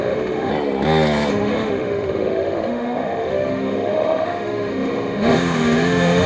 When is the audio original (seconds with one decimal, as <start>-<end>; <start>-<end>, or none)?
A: 0.5-1.3

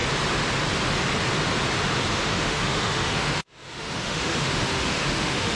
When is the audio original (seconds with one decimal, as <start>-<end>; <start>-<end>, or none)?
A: 0.0-2.1

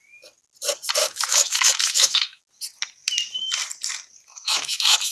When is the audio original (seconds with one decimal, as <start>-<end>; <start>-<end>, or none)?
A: 0.0-1.0; 2.4-4.3

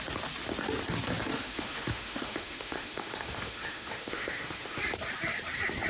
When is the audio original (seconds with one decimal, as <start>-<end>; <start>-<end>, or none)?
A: 0.0-1.3; 4.8-5.9

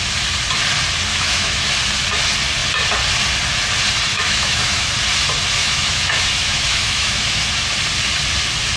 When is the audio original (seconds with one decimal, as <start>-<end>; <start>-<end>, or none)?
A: 0.0-1.1; 1.7-4.1; 4.9-5.6; 7.5-8.8

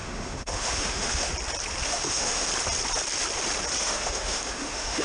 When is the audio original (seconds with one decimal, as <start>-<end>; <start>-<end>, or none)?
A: 1.3-1.8; 2.5-3.8

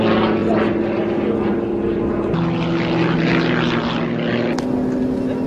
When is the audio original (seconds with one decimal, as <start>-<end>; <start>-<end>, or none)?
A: 0.0-5.5

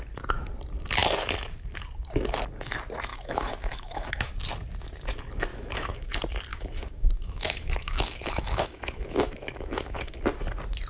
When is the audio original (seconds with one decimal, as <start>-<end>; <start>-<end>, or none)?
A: 0.0-3.1; 4.3-5.5; 6.1-6.5; 10.2-10.9